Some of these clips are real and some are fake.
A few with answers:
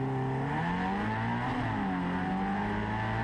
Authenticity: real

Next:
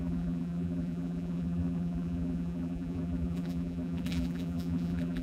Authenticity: fake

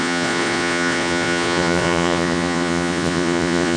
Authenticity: fake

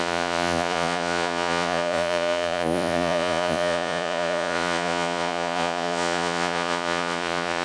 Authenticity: fake